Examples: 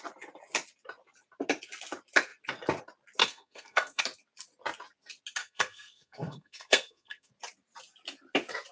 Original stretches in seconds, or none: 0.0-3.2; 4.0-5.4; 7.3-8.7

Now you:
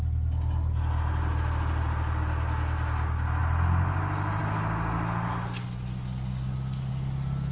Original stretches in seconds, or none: 0.0-7.5

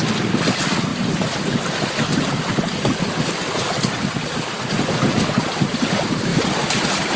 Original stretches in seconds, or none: 0.9-5.2

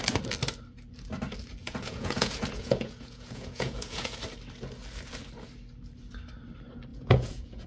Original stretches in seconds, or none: 0.0-1.6; 4.2-6.9

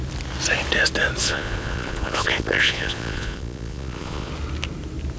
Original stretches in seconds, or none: 0.0-1.2; 4.3-5.2